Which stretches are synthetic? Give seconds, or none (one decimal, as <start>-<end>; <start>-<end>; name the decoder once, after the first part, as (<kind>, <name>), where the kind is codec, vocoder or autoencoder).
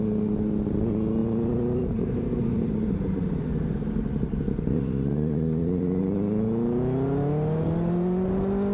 2.2-6.0 (vocoder, BigVGAN v2)